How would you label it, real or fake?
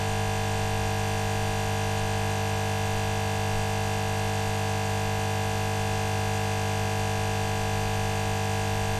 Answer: real